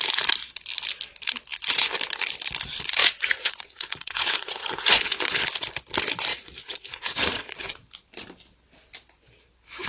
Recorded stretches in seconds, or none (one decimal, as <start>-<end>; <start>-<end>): 0.0-3.0; 5.4-6.3; 7.7-9.9